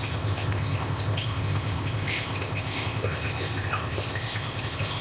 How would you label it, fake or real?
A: fake